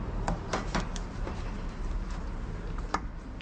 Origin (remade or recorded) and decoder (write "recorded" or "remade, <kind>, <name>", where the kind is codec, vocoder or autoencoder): remade, vocoder, BigVGAN v2